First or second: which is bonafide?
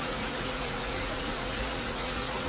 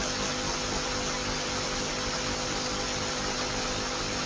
second